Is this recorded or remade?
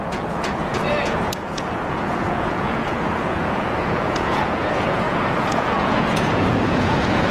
remade